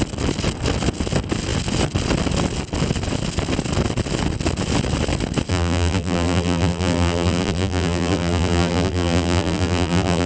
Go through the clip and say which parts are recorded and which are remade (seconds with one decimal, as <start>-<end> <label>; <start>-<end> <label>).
0.0-5.5 recorded; 5.5-10.3 remade